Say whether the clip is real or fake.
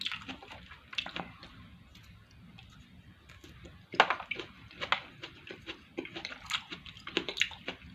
real